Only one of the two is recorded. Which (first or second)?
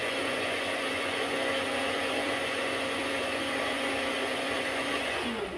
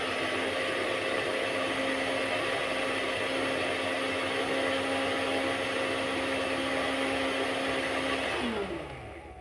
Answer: second